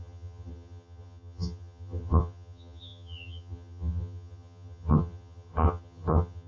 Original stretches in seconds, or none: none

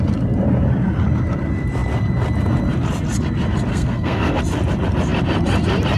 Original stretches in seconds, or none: 0.0-3.7; 4.4-6.0

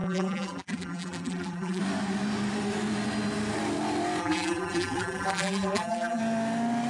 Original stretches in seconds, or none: 1.8-4.2; 6.2-6.9

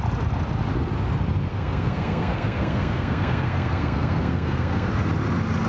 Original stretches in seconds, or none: 0.0-1.5; 4.9-5.7

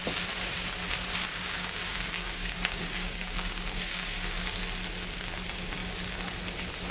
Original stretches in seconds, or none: 0.0-1.3; 4.6-6.9

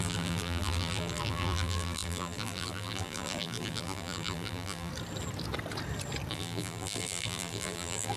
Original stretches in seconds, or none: 4.9-6.3